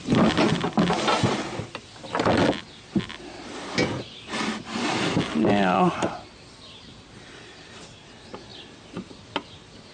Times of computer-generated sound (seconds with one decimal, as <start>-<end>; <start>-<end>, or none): none